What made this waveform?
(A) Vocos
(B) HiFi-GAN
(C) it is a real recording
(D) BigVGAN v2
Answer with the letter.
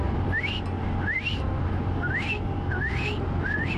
C